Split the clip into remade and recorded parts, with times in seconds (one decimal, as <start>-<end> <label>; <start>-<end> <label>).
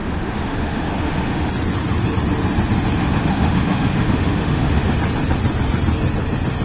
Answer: 0.0-1.5 remade; 1.5-3.0 recorded; 3.0-4.9 remade; 4.9-6.6 recorded